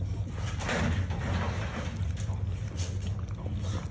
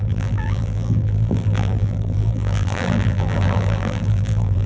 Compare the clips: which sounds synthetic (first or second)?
second